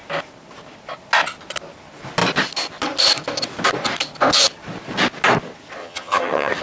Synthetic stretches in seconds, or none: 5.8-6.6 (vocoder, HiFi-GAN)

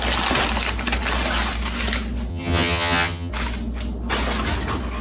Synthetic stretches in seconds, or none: 2.3-3.3 (vocoder, HiFi-GAN)

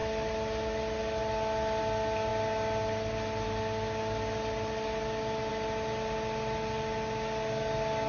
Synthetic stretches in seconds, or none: none

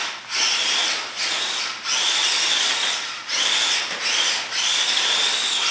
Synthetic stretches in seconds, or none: none

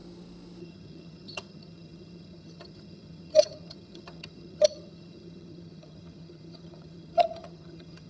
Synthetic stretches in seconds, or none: 0.6-8.1 (vocoder, HiFi-GAN)

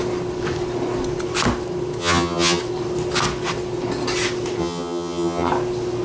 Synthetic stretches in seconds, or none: 2.0-2.6 (vocoder, HiFi-GAN); 4.6-5.5

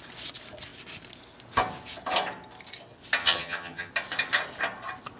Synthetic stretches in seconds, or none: 3.2-3.9 (vocoder, HiFi-GAN)

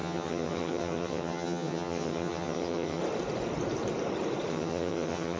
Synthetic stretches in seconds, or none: 0.0-3.0 (vocoder, HiFi-GAN); 4.5-5.4